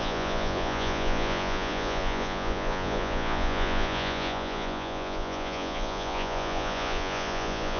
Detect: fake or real fake